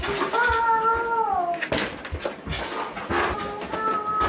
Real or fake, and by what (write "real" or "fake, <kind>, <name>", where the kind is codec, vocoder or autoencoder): real